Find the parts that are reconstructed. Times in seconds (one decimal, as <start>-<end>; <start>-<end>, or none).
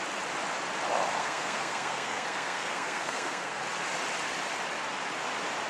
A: 1.2-3.6